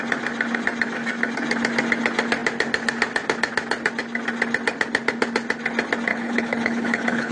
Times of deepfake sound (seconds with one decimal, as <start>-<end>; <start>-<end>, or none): 6.1-7.3